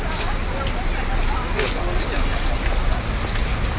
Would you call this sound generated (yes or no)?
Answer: no